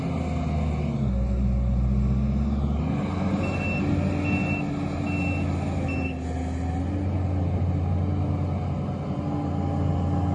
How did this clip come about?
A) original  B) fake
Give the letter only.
A